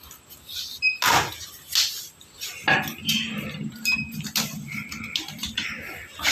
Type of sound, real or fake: real